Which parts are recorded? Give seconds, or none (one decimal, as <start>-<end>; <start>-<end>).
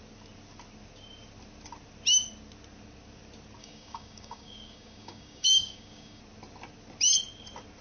0.0-3.6; 6.2-7.8